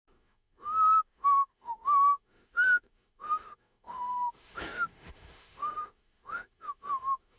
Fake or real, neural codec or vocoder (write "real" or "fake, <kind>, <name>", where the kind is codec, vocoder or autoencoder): fake, autoencoder, DAC-VAE